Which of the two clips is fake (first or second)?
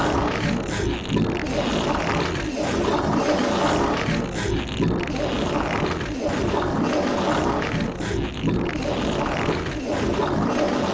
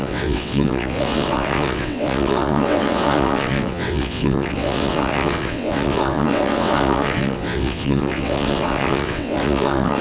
second